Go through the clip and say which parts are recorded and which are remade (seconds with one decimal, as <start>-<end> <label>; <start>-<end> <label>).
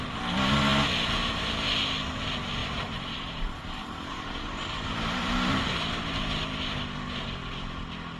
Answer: 0.0-2.6 recorded; 2.6-5.7 remade; 5.7-8.2 recorded